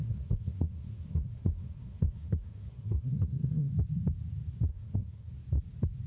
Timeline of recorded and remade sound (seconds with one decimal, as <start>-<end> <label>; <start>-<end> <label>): 0.0-3.7 remade; 3.7-4.7 recorded; 4.7-5.3 remade; 5.3-6.1 recorded